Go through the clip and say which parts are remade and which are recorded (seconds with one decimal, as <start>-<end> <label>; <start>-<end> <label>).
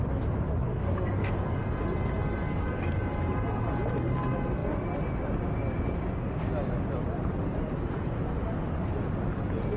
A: 0.0-0.7 recorded; 0.7-1.3 remade; 1.3-2.4 recorded; 2.4-3.0 remade; 3.0-9.8 recorded